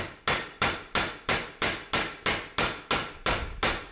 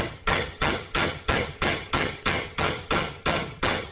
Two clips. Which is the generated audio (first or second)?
second